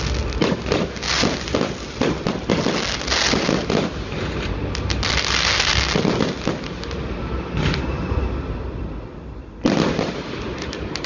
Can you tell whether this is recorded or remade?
recorded